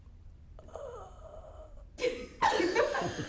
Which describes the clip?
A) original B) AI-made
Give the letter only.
A